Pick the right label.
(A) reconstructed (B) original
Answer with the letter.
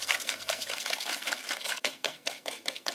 A